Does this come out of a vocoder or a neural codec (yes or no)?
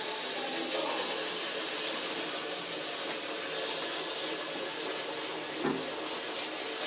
no